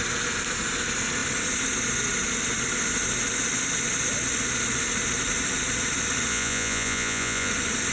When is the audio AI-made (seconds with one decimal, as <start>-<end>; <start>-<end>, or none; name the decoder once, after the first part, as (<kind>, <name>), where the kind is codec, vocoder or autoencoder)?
6.3-7.5 (vocoder, Vocos)